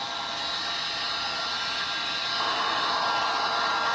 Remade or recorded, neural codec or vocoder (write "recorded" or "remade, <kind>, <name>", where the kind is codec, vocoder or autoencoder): recorded